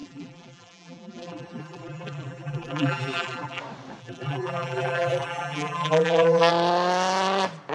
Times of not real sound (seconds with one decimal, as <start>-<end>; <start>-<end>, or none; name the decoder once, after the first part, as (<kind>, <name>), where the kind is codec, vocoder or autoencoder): 0.0-3.6 (vocoder, BigVGAN v2); 4.0-6.5